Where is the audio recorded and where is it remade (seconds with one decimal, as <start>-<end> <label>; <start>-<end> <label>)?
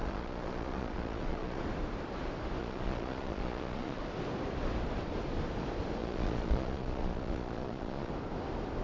0.0-1.6 remade; 1.6-2.6 recorded; 2.6-4.0 remade; 4.0-6.0 recorded; 6.0-8.1 remade; 8.1-8.8 recorded